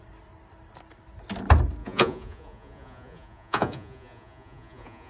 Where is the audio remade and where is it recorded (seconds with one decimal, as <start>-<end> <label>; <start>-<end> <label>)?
0.0-1.8 recorded; 1.8-5.1 remade